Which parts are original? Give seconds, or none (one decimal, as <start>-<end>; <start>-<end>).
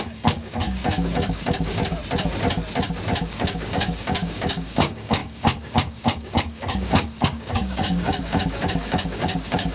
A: 2.0-3.2